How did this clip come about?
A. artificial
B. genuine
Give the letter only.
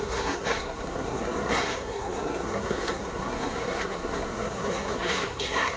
A